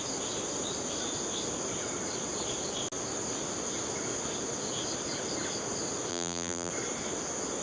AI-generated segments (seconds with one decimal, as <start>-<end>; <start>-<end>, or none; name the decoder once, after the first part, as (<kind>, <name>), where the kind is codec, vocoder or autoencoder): 6.1-6.7 (vocoder, BigVGAN v2)